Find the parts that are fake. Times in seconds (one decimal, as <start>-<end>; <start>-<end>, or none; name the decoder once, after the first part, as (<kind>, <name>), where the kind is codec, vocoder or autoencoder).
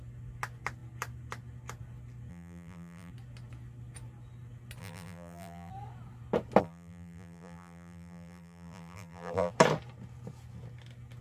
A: 2.3-3.1 (vocoder, BigVGAN v2); 4.8-5.7; 6.6-9.5